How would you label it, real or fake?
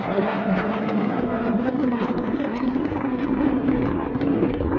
fake